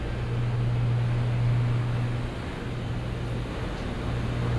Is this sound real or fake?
real